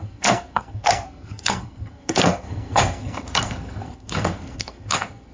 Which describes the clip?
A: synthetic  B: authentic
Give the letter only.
A